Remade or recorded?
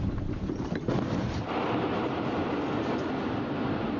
recorded